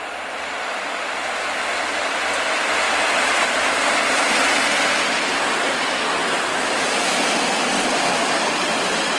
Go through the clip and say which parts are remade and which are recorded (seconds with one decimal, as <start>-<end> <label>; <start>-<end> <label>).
0.0-9.2 recorded